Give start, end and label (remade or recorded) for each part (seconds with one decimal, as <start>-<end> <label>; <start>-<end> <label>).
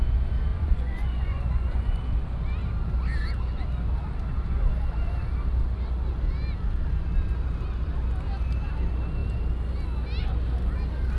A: 0.0-0.5 recorded; 0.5-2.0 remade; 2.0-11.2 recorded